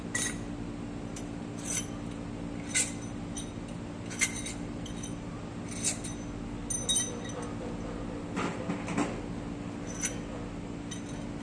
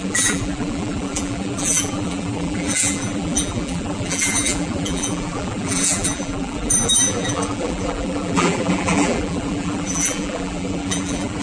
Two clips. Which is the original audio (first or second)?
first